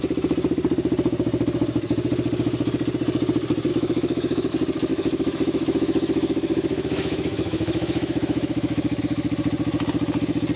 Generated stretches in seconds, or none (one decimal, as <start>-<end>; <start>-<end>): 3.7-4.5; 4.9-9.0